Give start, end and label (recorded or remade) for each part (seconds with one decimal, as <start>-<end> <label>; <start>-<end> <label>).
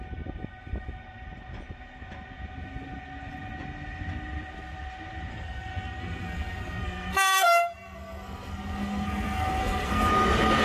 0.0-5.3 recorded; 5.3-10.1 remade; 10.1-10.6 recorded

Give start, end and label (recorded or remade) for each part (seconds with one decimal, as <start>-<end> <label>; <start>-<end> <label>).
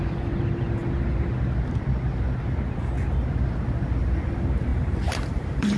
0.0-4.7 recorded; 4.7-5.8 remade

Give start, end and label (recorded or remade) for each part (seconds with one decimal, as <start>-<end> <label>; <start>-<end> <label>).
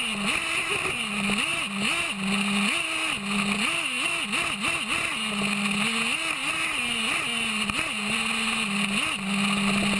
0.0-10.0 recorded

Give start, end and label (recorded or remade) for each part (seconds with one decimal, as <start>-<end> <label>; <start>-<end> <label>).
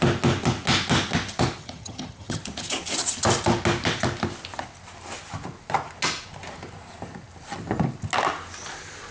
0.0-1.6 recorded; 1.6-2.4 remade; 2.4-9.1 recorded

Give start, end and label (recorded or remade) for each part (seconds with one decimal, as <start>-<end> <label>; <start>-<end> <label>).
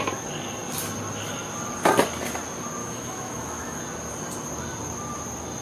0.0-2.8 recorded; 2.8-3.8 remade; 3.8-5.6 recorded